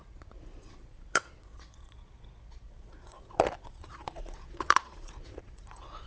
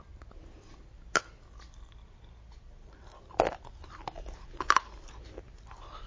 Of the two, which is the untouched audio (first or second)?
second